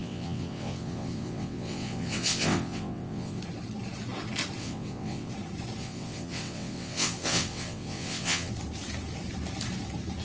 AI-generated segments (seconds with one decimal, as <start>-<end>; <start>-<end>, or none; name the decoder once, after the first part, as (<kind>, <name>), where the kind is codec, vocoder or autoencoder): 0.0-3.4 (vocoder, WaveNeXt); 4.6-5.3; 5.8-8.5